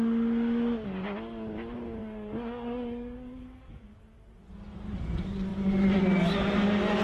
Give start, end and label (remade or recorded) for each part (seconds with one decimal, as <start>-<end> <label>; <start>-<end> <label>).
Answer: 0.0-2.0 recorded; 2.0-4.0 remade; 4.0-7.0 recorded